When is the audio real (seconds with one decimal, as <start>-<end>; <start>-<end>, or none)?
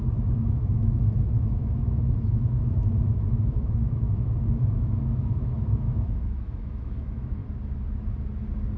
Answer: 7.4-8.8